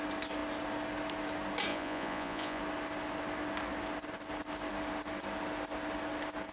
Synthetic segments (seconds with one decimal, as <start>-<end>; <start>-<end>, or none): 1.7-2.6